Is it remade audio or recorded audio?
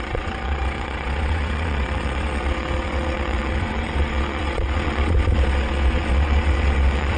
remade